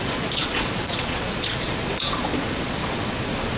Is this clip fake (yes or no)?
yes